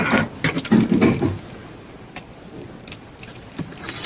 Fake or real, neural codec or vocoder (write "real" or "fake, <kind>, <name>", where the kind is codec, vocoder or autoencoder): real